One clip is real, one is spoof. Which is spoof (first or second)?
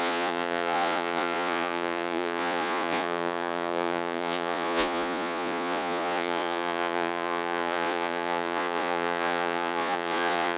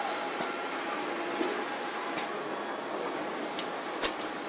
first